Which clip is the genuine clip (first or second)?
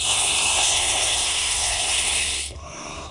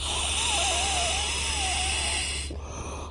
second